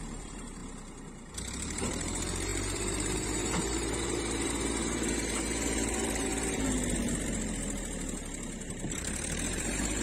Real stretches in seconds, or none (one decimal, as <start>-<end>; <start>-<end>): 0.6-1.5; 6.3-8.7